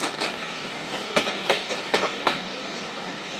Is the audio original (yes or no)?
no